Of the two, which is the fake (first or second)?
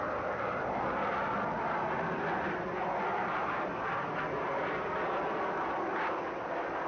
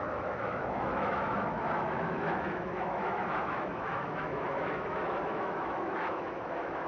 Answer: second